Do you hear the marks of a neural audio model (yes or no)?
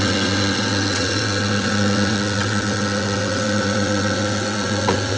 yes